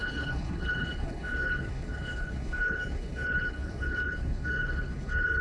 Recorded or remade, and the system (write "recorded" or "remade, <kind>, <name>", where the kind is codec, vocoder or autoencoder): remade, codec, HILCodec